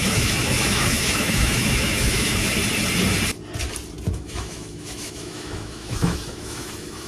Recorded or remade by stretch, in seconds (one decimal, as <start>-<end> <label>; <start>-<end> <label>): 0.0-2.6 remade; 2.6-4.1 recorded; 4.1-7.1 remade